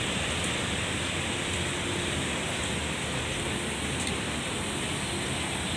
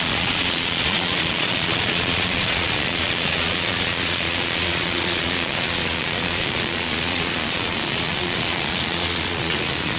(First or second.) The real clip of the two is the first